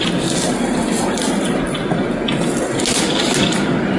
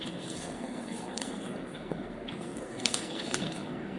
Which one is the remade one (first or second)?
second